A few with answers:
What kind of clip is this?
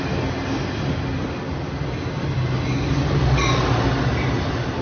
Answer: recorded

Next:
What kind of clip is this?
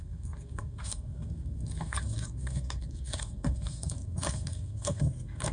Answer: remade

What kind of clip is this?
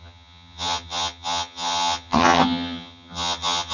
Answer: remade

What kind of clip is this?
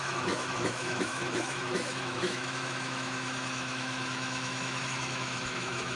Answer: remade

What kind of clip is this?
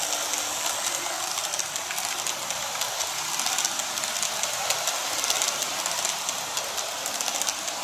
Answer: recorded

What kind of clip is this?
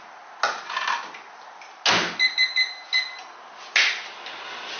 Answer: recorded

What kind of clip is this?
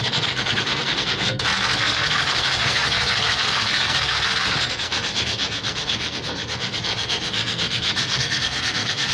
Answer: remade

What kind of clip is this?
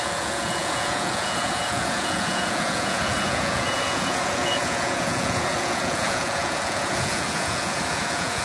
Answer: remade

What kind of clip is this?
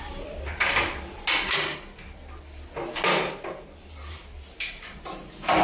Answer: recorded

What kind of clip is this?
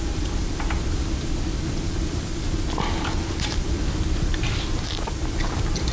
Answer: remade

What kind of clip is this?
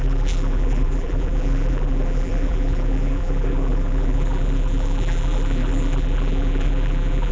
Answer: remade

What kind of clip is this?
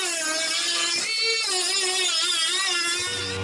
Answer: recorded